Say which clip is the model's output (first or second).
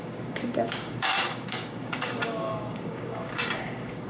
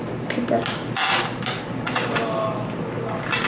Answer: first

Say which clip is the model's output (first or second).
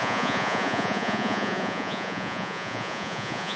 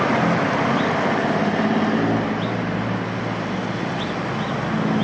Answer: first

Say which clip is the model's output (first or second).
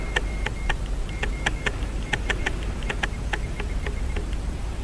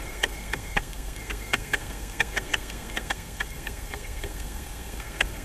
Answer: second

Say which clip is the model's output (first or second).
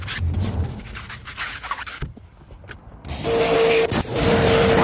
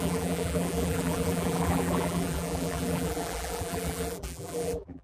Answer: second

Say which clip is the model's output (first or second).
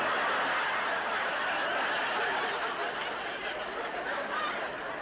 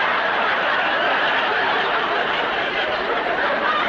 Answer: second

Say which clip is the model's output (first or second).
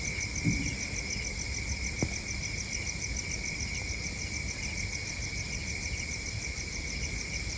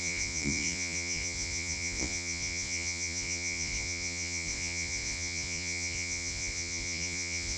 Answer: second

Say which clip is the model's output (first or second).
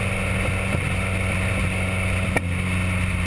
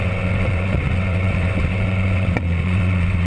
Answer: second